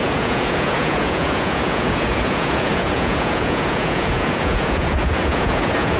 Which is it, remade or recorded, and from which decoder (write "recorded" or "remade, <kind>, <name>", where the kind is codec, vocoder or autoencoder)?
remade, vocoder, Vocos